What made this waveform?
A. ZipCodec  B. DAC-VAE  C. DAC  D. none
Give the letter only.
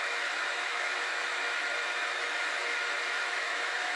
B